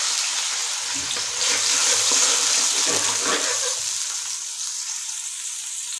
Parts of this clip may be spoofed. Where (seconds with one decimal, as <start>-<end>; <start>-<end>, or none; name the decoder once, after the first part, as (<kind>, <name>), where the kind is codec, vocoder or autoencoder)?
none